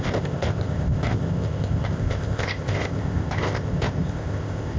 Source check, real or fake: fake